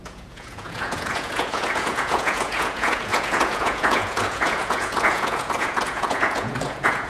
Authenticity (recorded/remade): remade